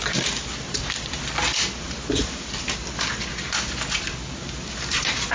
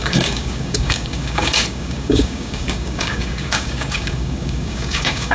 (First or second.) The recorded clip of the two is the first